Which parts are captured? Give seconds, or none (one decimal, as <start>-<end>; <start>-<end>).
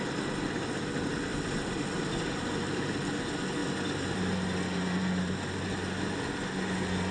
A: 0.0-1.3; 3.2-3.6; 4.2-5.0; 6.1-7.1